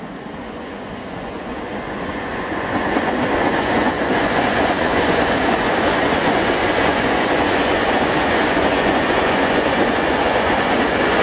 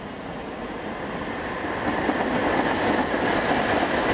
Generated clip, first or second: first